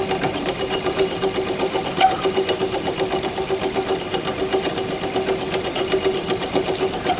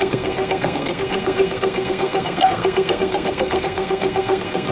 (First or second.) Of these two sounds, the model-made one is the second